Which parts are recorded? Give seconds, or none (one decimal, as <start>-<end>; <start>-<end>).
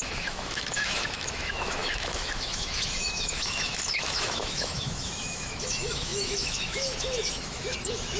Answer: none